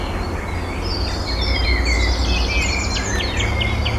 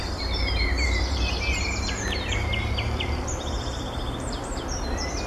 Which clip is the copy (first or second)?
second